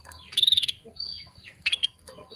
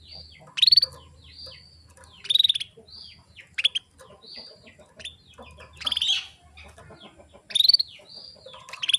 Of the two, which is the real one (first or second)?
second